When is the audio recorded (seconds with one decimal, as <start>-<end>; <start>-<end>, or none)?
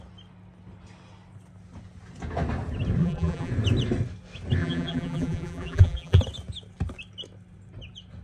0.0-3.0; 3.5-4.6; 6.2-8.2